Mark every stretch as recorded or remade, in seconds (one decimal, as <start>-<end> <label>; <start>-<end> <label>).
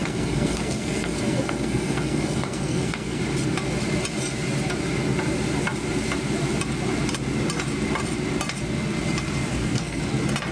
0.0-3.2 remade; 3.2-9.5 recorded; 9.5-10.0 remade; 10.0-10.5 recorded